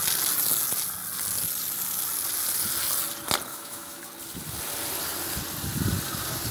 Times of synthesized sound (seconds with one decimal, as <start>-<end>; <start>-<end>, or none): 3.5-4.0